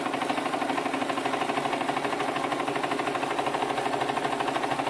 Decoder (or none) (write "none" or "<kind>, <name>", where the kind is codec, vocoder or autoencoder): none